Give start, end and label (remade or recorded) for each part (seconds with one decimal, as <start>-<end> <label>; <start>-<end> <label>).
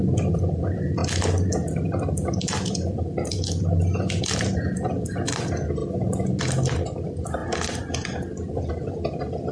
0.0-5.8 remade; 5.8-6.4 recorded; 6.4-9.5 remade